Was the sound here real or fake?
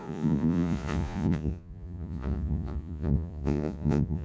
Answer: fake